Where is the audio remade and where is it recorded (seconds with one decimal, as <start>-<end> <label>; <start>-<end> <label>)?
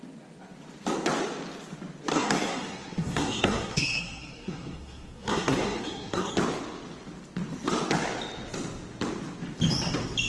0.0-2.1 recorded; 2.1-6.3 remade; 6.3-10.3 recorded